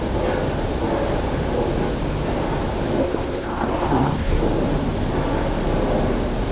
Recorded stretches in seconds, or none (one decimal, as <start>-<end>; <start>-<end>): 0.0-3.0; 4.4-6.5